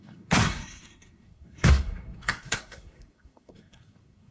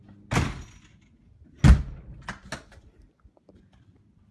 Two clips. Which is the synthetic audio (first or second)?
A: first